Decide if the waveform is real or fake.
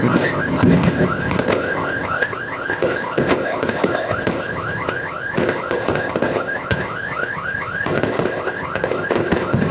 fake